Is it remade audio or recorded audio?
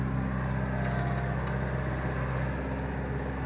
recorded